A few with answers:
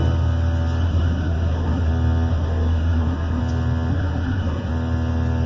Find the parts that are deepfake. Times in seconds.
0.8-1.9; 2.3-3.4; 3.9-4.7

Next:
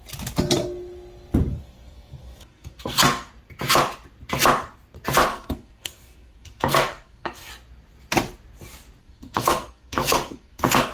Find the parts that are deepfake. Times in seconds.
1.5-3.3; 5.3-7.5; 9.0-10.9

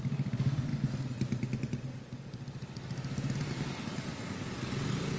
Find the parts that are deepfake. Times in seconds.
none